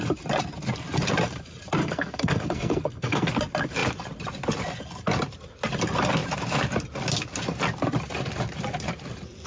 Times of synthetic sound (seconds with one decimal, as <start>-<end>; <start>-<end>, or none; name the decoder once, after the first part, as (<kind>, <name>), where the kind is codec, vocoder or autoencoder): 1.8-3.3 (codec, SNAC)